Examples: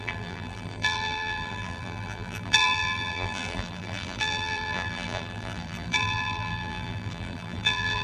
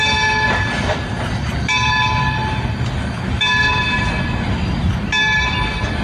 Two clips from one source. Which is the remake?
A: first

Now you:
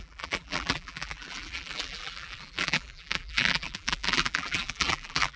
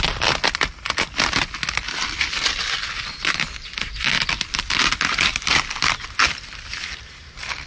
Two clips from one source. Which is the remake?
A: first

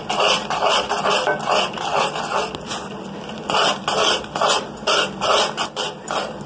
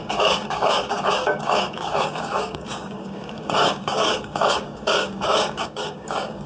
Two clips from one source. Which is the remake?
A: second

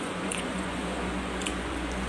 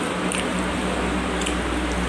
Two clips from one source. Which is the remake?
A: first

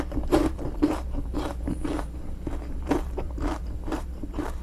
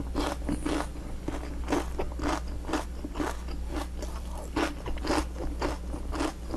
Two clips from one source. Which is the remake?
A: first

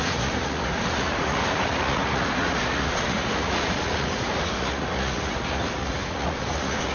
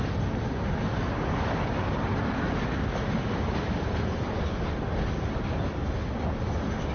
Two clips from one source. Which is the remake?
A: first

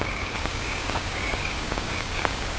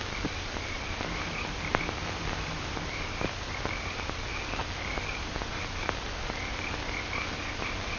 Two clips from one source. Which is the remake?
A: first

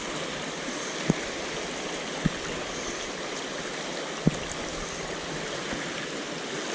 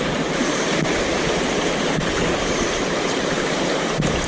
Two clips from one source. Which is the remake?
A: second